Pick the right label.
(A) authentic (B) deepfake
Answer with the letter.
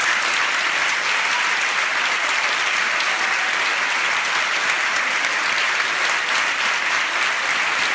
B